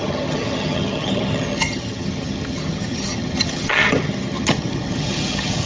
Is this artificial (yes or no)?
yes